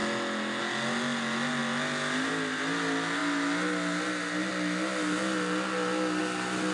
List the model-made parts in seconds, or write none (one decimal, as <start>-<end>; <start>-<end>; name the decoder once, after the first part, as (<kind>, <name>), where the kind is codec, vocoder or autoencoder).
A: none